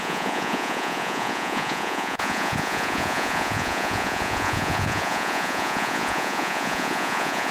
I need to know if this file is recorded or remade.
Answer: remade